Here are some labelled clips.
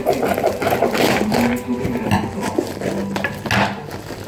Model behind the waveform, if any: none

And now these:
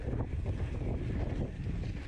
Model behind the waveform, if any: none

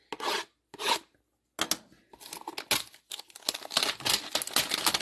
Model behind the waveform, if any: none